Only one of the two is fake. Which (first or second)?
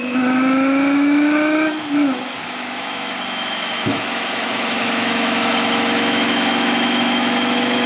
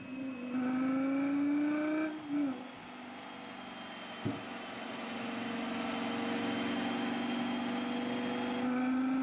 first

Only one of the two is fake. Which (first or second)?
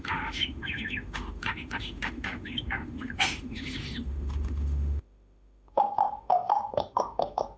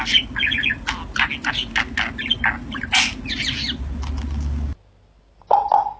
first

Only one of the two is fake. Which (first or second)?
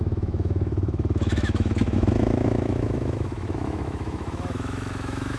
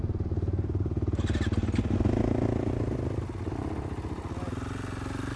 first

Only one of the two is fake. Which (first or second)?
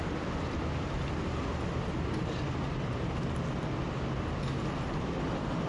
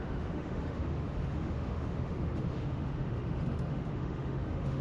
second